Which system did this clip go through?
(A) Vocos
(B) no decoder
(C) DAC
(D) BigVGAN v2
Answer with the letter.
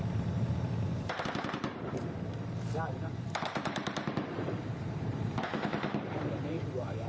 D